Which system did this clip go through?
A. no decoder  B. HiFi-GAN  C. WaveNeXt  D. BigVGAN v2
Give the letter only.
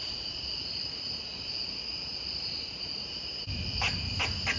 A